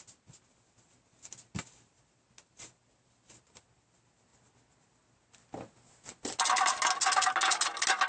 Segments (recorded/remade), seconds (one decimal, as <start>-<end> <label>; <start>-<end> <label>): 0.0-8.1 recorded